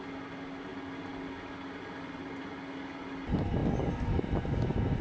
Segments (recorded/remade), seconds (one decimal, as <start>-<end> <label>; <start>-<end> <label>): 0.0-5.0 recorded